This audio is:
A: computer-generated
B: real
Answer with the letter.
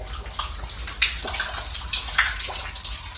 B